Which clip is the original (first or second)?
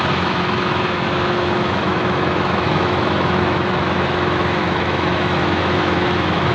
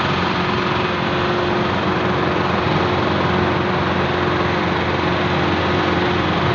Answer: second